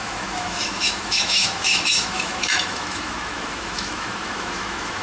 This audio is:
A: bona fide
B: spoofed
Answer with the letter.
B